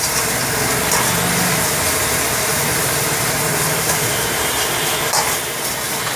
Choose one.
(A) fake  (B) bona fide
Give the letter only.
A